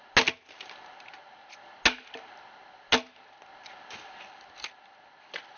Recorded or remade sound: recorded